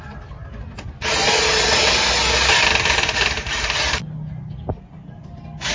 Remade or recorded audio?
recorded